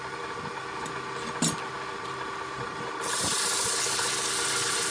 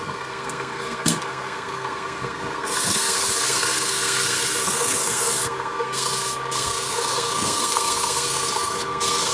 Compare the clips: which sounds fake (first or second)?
second